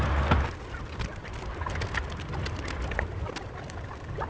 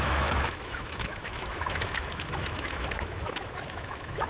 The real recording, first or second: first